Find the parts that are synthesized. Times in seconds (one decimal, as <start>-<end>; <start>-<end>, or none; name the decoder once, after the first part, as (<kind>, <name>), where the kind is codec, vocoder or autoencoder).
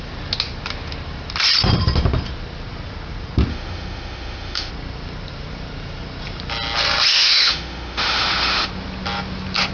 3.5-4.7 (autoencoder, DAC-VAE); 7.1-8.7